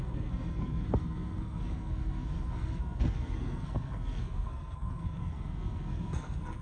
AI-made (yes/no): yes